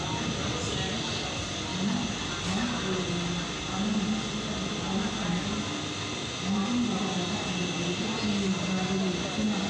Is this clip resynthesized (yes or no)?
no